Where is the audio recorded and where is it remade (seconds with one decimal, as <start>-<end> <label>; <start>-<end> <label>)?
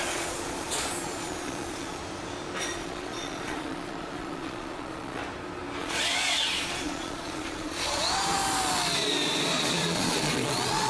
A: 0.0-2.0 remade; 2.0-2.6 recorded; 2.6-5.2 remade; 5.2-5.8 recorded; 5.8-8.4 remade; 8.4-9.5 recorded; 9.5-10.9 remade